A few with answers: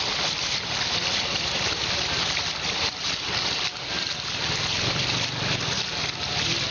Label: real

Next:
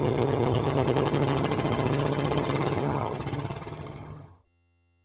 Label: fake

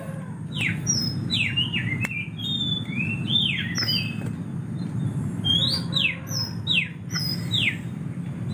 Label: real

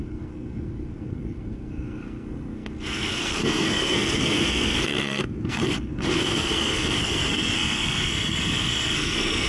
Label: fake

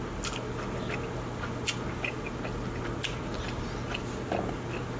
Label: real